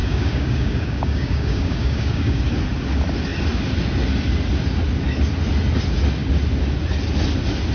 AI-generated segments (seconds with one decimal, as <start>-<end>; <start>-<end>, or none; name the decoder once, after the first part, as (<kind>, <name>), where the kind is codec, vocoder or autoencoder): 0.0-2.4 (codec, DAC)